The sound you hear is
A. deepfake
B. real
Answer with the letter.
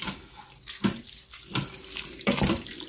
A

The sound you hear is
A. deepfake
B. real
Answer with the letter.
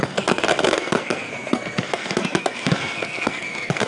A